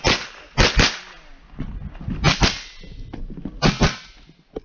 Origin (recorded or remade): recorded